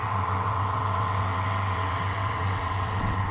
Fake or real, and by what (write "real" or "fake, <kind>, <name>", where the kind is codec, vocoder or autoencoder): fake, vocoder, WaveNeXt